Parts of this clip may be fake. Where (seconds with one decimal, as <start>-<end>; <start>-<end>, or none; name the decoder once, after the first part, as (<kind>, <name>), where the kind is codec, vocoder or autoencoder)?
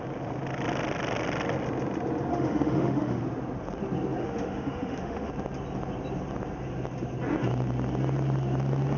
2.3-3.2 (autoencoder, DAC-VAE); 4.2-5.3